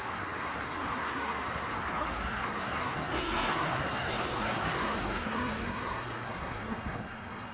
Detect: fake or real fake